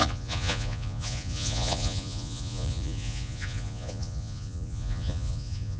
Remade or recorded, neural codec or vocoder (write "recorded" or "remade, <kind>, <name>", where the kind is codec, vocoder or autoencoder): remade, vocoder, Vocos